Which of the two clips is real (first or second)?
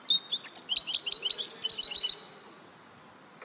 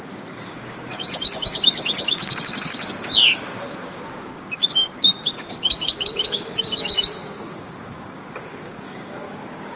first